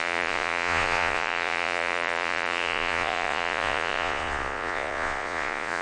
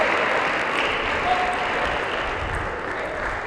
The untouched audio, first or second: second